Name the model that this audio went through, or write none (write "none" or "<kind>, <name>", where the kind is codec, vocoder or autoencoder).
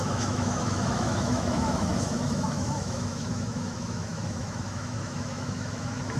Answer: autoencoder, DAC-VAE